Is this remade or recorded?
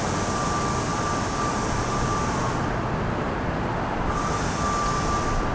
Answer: recorded